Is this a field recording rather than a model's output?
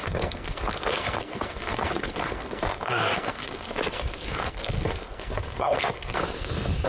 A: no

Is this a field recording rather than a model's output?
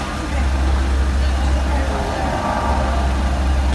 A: yes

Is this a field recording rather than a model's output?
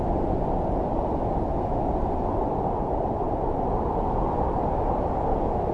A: yes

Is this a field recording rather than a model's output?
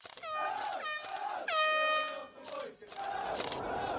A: yes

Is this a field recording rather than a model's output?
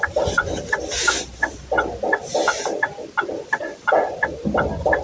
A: no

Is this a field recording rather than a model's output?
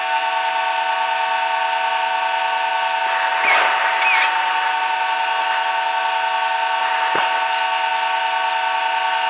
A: yes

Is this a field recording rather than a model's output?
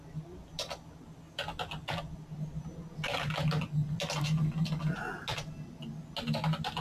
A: yes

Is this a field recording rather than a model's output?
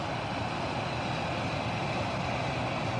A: yes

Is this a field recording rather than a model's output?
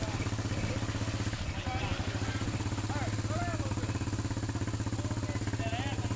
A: yes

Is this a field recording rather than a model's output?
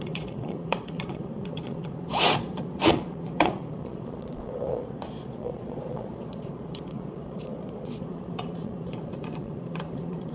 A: no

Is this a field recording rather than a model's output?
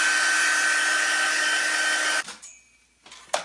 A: yes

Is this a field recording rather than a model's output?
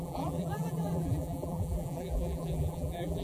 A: no